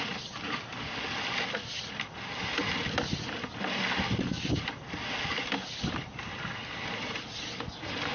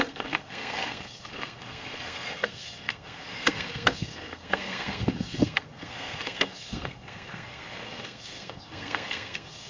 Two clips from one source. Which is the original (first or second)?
first